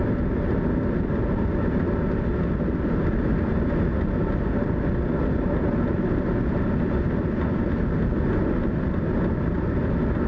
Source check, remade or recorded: recorded